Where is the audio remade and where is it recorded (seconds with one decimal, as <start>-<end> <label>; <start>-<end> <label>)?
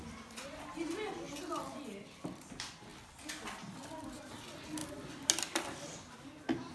0.0-6.7 recorded